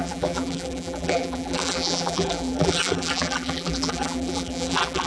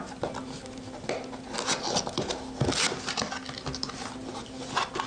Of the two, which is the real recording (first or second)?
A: second